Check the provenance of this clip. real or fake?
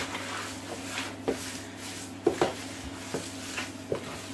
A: real